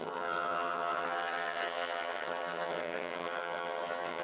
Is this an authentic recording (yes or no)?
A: no